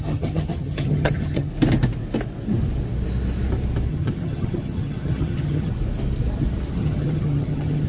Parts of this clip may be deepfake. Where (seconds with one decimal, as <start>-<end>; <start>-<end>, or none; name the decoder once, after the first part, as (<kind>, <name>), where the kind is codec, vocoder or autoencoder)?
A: 0.0-1.5 (vocoder, HiFi-GAN); 3.9-5.7; 6.7-7.9